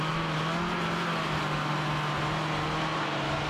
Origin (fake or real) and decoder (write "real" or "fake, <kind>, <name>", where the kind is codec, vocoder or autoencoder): real